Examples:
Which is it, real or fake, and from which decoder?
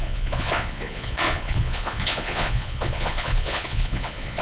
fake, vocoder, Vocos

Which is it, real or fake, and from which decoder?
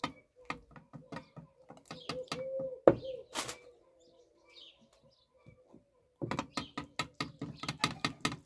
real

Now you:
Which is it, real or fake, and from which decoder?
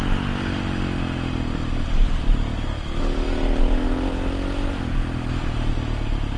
real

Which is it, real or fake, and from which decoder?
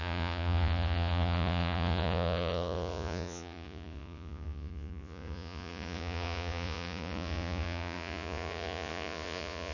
fake, vocoder, Vocos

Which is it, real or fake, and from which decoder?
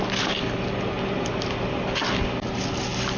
real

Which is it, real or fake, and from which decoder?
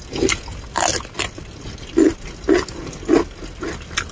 real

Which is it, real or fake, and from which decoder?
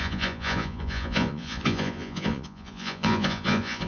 fake, vocoder, Vocos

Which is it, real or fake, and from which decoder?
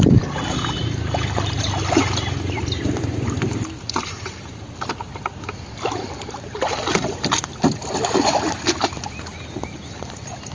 real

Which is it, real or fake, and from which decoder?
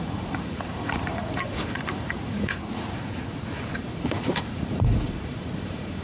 fake, vocoder, Vocos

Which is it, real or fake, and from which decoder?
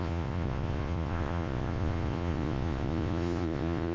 fake, vocoder, Vocos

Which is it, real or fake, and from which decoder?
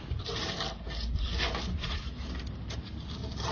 real